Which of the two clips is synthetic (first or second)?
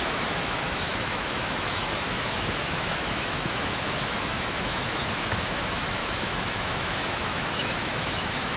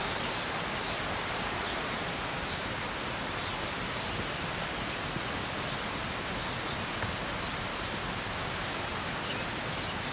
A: first